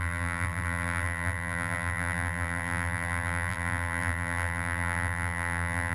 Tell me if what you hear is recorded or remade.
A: remade